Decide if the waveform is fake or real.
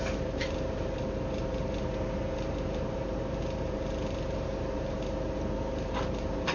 fake